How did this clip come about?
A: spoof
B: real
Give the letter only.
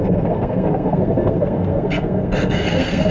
A